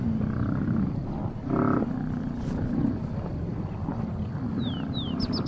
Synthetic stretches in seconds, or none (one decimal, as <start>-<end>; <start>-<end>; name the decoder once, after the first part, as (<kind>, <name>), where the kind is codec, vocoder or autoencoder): none